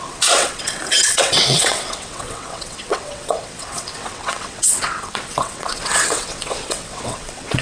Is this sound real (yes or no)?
no